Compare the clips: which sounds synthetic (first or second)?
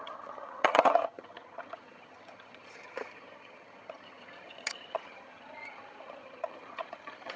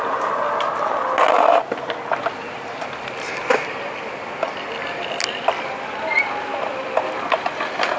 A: first